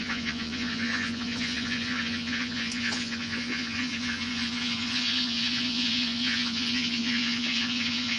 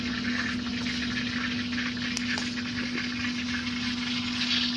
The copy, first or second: first